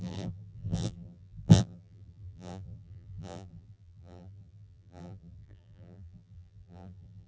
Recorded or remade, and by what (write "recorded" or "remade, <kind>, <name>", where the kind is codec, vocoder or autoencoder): remade, vocoder, BigVGAN v2